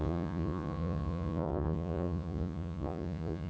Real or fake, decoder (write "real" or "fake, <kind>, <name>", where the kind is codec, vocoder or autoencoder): fake, vocoder, Vocos